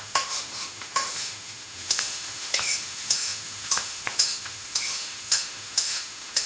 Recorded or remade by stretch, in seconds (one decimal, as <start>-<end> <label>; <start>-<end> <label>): 0.0-6.5 remade